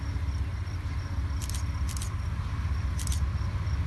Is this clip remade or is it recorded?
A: recorded